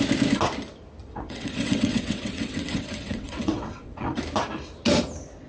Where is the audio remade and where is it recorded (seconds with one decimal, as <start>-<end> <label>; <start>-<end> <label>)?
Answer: 0.0-1.0 recorded; 1.0-4.2 remade; 4.2-5.5 recorded